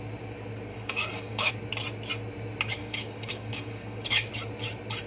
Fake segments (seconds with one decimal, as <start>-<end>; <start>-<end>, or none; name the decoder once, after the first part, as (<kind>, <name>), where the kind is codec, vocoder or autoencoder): 0.7-1.5 (codec, DAC); 2.8-4.3

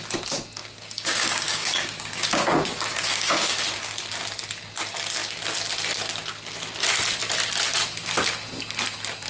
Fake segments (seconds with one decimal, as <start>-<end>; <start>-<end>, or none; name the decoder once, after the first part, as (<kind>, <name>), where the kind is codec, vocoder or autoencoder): 0.6-3.8 (codec, DAC)

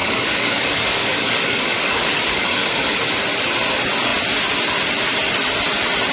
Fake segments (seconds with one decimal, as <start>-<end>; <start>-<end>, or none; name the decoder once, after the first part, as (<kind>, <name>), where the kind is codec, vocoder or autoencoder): 0.0-3.0 (codec, DAC)

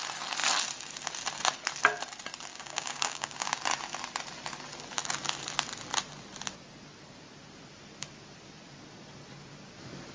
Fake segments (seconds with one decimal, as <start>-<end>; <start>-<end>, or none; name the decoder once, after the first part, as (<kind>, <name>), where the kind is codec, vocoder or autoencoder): 2.5-3.6 (codec, DAC)

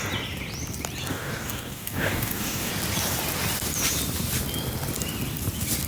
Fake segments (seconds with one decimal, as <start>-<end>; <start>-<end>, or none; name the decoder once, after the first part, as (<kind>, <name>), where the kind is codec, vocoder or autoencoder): 1.1-2.7 (codec, DAC)

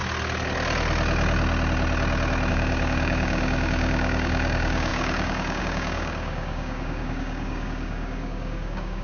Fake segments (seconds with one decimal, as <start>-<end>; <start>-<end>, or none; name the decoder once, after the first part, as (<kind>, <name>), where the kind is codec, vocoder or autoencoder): 2.5-9.0 (codec, DAC)